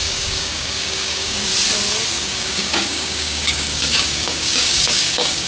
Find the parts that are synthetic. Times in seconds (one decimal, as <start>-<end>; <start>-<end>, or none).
0.0-1.5; 2.1-5.5